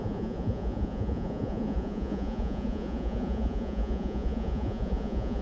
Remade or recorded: remade